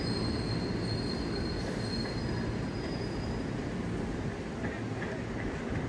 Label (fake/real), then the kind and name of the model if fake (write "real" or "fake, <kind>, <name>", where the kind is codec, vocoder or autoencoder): real